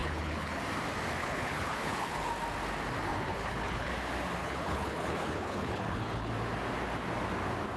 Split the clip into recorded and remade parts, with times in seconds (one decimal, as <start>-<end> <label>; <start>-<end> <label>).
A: 0.0-0.6 remade; 0.6-1.2 recorded; 1.2-2.3 remade; 2.3-3.1 recorded; 3.1-3.9 remade; 3.9-4.4 recorded; 4.4-6.3 remade; 6.3-7.8 recorded